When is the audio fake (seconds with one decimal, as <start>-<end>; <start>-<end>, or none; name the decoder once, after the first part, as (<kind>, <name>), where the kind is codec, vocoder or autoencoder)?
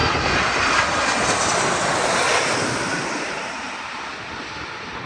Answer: 0.0-0.8 (vocoder, BigVGAN v2); 2.9-4.1